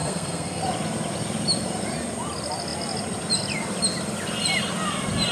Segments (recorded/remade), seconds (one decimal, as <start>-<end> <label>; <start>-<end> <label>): 0.0-0.6 remade; 0.6-5.3 recorded